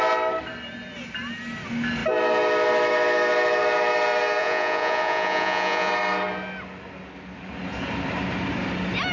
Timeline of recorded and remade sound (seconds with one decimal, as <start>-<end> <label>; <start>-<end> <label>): 0.0-4.4 recorded; 4.4-5.9 remade; 5.9-9.1 recorded